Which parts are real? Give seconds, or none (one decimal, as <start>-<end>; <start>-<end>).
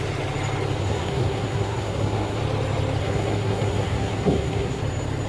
0.0-0.8; 2.4-3.0; 4.8-5.3